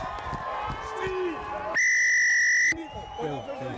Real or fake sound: real